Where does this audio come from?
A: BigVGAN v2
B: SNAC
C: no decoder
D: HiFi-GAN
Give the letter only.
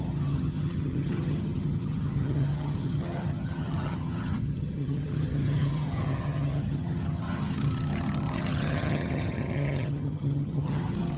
D